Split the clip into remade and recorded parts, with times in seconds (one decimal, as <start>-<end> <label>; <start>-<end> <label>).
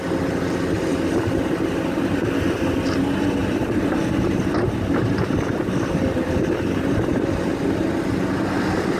0.0-3.4 recorded; 3.4-7.1 remade; 7.1-9.0 recorded